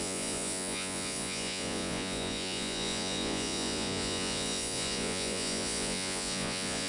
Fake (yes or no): yes